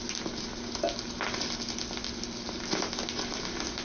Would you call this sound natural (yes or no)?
yes